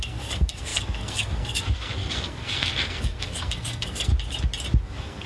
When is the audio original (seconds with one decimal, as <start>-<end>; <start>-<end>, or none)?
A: 4.1-4.8